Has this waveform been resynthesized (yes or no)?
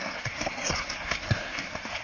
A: yes